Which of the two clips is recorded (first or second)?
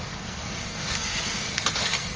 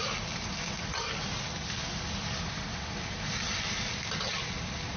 second